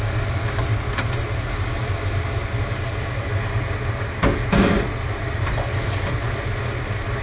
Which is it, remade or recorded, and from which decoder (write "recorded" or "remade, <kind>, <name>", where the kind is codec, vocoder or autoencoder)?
recorded